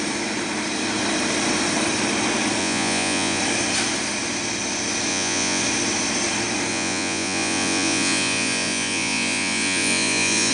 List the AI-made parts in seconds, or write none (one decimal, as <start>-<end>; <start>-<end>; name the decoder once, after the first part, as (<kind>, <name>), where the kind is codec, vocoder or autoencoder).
2.6-3.4 (vocoder, Vocos); 5.1-5.6; 6.7-10.5